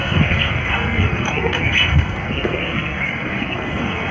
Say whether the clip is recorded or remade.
remade